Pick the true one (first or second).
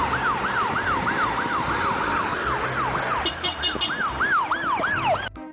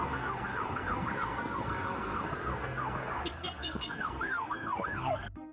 first